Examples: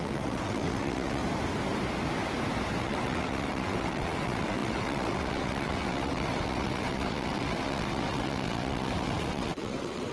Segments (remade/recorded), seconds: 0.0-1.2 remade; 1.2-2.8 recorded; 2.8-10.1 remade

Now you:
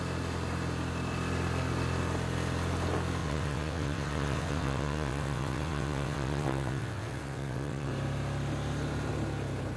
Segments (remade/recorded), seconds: 0.0-3.2 recorded; 3.2-7.9 remade; 7.9-9.8 recorded

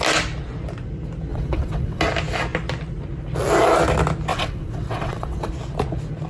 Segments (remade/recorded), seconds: 0.0-1.3 recorded; 1.3-2.0 remade; 2.0-4.3 recorded; 4.3-5.5 remade; 5.5-6.3 recorded

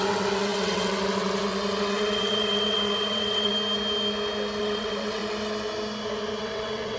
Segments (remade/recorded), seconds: 0.0-3.5 remade; 3.5-4.6 recorded; 4.6-5.2 remade; 5.2-6.4 recorded; 6.4-7.0 remade

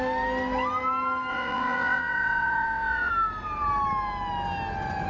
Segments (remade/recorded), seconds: 0.0-1.3 recorded; 1.3-3.1 remade; 3.1-5.1 recorded